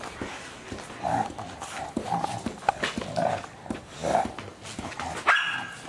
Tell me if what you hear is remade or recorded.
recorded